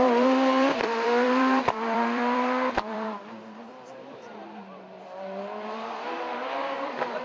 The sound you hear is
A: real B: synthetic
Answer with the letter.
B